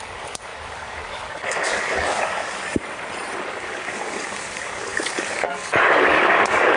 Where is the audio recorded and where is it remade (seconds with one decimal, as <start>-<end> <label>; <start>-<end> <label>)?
0.0-2.6 remade; 2.6-3.5 recorded; 3.5-6.8 remade